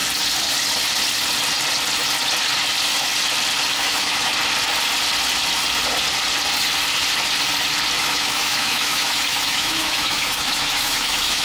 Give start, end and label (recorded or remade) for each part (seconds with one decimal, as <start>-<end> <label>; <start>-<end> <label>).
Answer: 0.0-3.7 recorded; 3.7-4.3 remade; 4.3-8.0 recorded; 8.0-11.4 remade